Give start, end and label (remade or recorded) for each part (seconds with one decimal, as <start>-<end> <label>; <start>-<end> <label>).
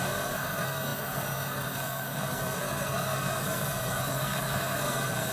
0.0-5.3 remade